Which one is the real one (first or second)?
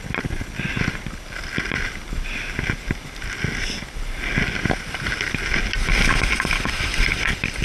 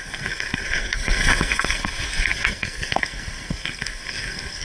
first